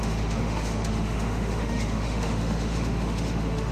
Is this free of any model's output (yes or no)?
no